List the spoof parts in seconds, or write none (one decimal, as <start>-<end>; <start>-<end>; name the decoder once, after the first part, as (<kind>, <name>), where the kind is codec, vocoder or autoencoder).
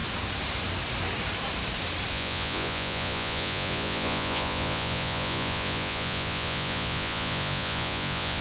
2.1-8.4 (vocoder, Vocos)